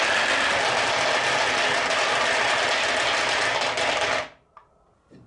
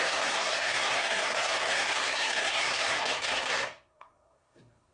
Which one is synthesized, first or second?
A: second